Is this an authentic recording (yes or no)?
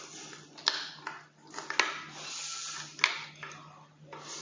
yes